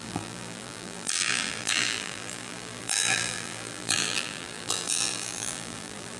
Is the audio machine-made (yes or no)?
yes